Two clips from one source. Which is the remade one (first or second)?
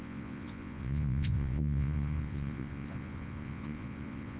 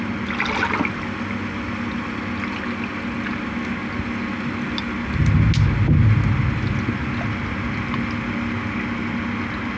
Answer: first